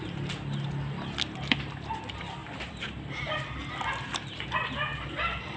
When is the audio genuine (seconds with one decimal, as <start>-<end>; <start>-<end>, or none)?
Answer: 0.0-5.6